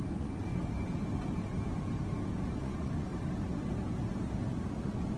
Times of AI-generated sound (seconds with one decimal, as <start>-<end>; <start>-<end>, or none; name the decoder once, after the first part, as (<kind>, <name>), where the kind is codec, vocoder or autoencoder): 0.0-0.6 (vocoder, Vocos); 2.6-3.1; 4.8-5.2

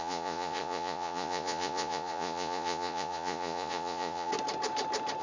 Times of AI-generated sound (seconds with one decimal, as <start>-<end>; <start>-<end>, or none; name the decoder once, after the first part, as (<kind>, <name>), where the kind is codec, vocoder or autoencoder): 0.0-4.3 (vocoder, Vocos)